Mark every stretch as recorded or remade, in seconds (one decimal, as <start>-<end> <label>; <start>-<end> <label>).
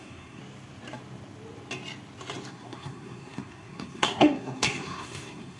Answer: 0.0-0.4 remade; 0.4-2.5 recorded; 2.5-5.6 remade